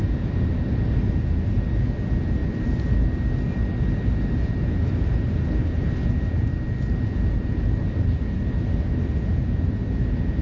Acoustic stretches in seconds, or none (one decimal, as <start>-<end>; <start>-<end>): 0.0-10.4